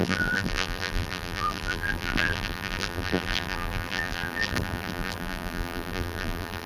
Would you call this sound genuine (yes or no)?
no